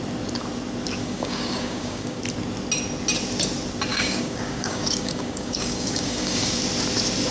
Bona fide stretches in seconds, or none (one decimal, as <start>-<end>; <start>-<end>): 0.0-1.0; 2.2-3.9; 6.6-7.3